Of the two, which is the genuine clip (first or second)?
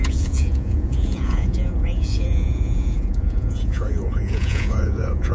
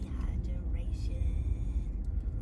second